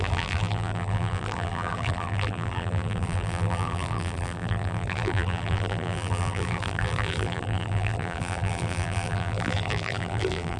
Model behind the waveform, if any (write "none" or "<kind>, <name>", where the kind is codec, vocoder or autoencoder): vocoder, BigVGAN v2